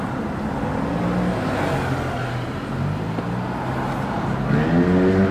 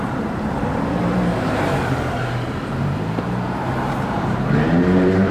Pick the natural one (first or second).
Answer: first